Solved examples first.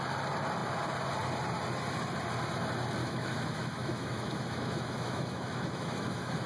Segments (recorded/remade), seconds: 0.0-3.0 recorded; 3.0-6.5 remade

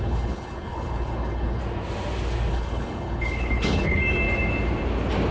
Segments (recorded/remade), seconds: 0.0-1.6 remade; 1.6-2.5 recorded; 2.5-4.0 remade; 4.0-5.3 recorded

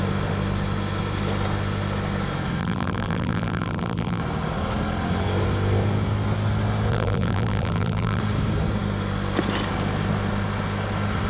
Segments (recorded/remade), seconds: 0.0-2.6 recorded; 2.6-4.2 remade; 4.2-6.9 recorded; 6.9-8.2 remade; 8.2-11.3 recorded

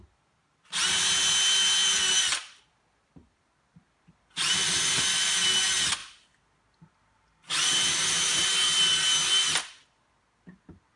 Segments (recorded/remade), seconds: 0.0-11.0 recorded

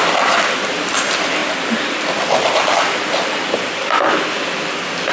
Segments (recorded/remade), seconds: 0.0-5.1 recorded

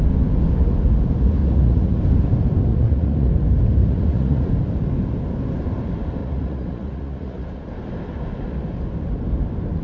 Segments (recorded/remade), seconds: 0.0-1.4 recorded; 1.4-2.0 remade; 2.0-2.7 recorded; 2.7-3.3 remade; 3.3-3.8 recorded; 3.8-4.5 remade; 4.5-6.2 recorded; 6.2-7.7 remade; 7.7-9.8 recorded

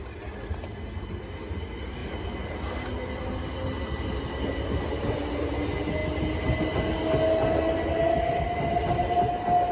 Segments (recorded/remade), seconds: 0.0-9.7 recorded

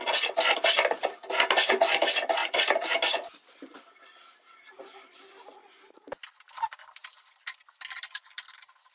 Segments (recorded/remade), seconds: 0.0-8.9 recorded